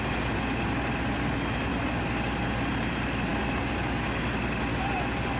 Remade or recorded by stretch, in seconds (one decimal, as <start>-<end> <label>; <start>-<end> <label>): 0.0-5.4 recorded